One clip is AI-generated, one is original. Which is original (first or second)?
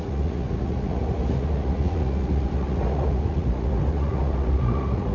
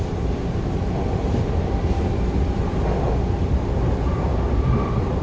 second